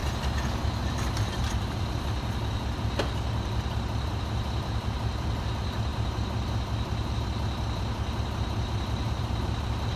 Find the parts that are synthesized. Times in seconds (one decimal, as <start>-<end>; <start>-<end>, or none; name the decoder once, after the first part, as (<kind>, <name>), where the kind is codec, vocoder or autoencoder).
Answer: 1.4-5.9 (vocoder, BigVGAN v2); 7.1-10.0